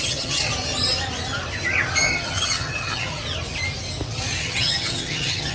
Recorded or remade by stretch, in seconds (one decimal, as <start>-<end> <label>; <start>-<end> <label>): 0.0-0.5 remade; 0.5-2.0 recorded; 2.0-3.2 remade; 3.2-4.4 recorded; 4.4-5.5 remade